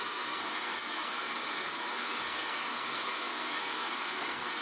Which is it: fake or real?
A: fake